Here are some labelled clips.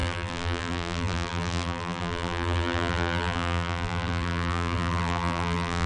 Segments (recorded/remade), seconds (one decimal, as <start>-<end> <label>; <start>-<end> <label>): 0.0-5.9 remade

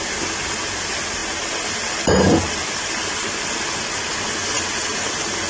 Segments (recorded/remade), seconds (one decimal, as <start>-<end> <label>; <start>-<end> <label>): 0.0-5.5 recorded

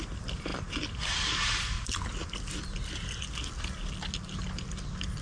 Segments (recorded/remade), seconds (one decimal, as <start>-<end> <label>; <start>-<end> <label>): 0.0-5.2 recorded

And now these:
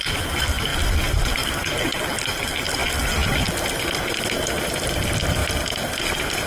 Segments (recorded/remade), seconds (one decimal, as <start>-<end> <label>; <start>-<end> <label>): 0.0-0.7 remade; 0.7-4.6 recorded; 4.6-5.4 remade; 5.4-6.5 recorded

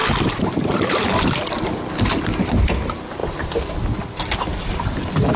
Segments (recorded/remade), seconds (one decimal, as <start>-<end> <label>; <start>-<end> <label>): 0.0-5.4 recorded